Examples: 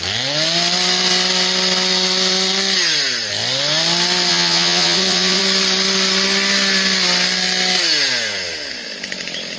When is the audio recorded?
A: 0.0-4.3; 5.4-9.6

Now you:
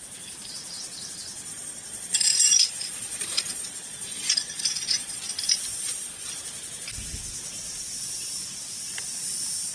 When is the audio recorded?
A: 0.0-1.5; 5.2-5.7; 6.3-9.7

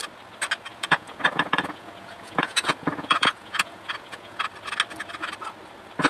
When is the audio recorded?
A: 0.0-0.7; 4.4-6.1

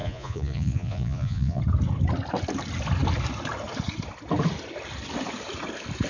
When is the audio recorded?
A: 1.6-6.1

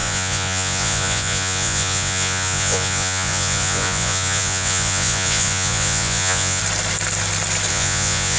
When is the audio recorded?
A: 6.6-7.7